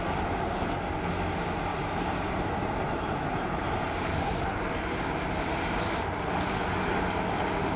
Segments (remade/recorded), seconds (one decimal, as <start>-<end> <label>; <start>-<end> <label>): 0.0-1.7 recorded; 1.7-4.7 remade; 4.7-7.8 recorded